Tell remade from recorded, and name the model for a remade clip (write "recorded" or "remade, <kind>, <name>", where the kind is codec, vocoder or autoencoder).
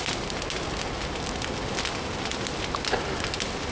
recorded